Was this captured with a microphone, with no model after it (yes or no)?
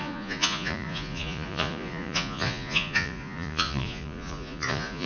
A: no